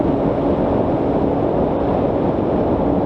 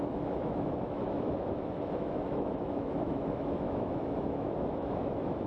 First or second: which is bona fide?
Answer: first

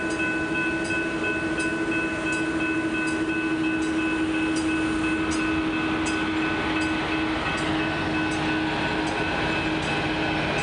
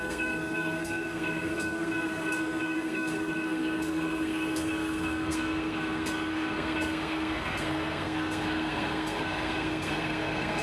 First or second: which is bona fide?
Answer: first